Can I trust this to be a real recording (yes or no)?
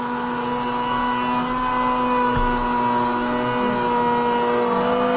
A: yes